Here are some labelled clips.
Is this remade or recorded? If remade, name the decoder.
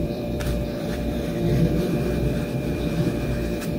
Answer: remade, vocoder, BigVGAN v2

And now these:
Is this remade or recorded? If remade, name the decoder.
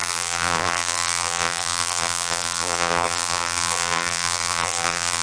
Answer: remade, vocoder, BigVGAN v2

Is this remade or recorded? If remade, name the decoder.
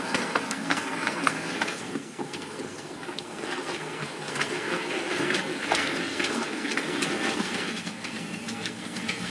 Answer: remade, codec, SNAC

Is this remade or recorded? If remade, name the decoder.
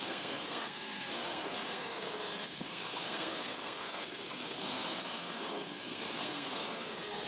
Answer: remade, codec, SNAC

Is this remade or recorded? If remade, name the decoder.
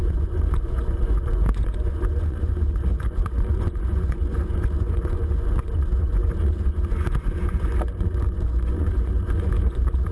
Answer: remade, vocoder, Vocos